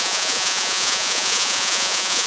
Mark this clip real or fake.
fake